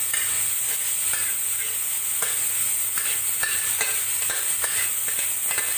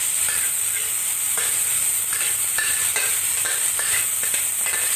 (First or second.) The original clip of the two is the first